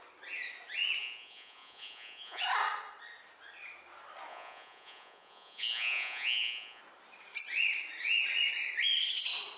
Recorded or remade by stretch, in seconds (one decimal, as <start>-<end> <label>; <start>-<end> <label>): 0.0-1.0 recorded; 1.0-2.4 remade; 2.4-4.3 recorded; 4.3-6.8 remade; 6.8-9.6 recorded